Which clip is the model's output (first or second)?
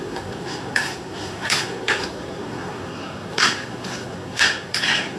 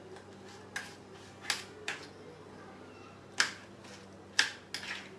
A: first